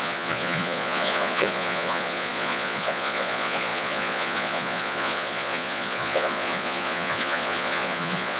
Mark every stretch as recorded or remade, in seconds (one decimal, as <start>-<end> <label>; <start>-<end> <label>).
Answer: 0.0-8.4 remade